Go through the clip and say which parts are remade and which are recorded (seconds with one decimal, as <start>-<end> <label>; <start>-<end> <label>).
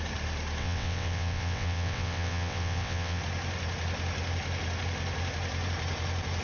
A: 0.0-0.6 recorded; 0.6-3.2 remade; 3.2-6.4 recorded